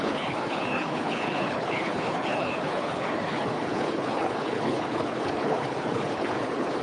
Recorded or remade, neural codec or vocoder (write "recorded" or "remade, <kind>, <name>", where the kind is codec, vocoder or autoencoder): remade, codec, HILCodec